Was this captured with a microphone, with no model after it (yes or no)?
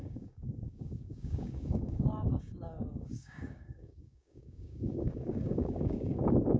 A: no